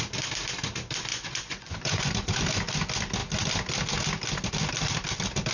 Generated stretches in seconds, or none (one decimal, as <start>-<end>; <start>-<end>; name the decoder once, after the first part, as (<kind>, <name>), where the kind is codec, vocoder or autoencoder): 1.1-2.1 (vocoder, Vocos)